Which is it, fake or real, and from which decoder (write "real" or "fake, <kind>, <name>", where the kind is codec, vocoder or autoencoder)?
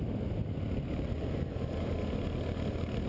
real